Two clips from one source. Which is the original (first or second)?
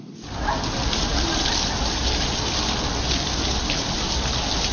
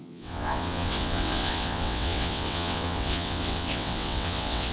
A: first